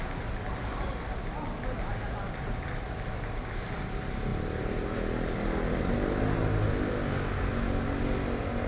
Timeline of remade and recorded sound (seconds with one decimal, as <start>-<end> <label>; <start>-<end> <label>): 0.0-8.7 recorded